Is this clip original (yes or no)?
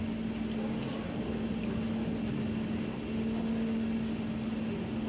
yes